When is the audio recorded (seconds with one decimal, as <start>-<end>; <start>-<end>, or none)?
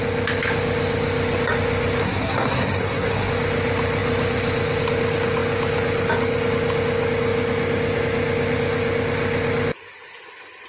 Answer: 0.0-2.0; 3.3-10.7